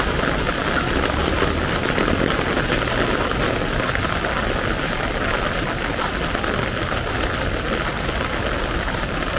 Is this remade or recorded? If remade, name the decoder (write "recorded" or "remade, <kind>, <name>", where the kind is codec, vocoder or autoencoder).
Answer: recorded